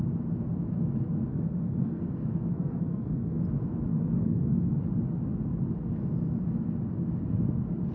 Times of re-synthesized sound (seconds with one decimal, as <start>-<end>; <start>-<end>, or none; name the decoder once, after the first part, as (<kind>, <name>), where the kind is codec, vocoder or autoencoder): 1.3-2.0 (codec, SNAC); 2.5-3.4; 3.9-4.8